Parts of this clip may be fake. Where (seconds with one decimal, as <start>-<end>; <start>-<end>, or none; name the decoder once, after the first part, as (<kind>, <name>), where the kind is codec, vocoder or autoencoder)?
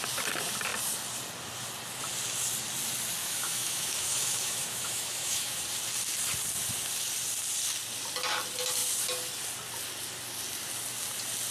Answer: 3.2-5.6 (autoencoder, DAC-VAE)